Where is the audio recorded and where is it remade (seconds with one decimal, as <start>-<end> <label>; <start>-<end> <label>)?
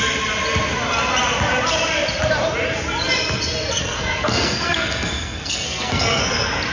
0.0-3.8 recorded; 3.8-6.2 remade; 6.2-6.7 recorded